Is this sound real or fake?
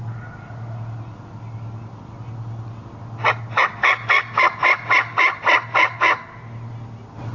real